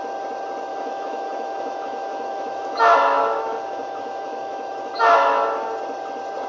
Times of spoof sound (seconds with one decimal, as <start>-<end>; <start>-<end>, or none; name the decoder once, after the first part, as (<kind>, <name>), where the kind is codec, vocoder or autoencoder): 0.7-2.8 (autoencoder, DAC-VAE); 3.2-4.9